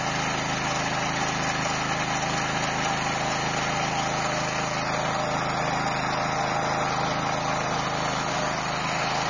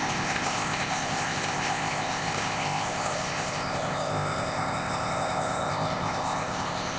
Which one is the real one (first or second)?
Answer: first